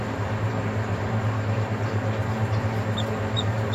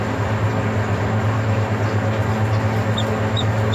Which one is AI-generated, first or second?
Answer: first